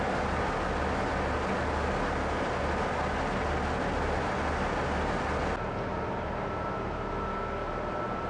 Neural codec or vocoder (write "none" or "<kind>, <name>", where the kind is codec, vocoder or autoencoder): none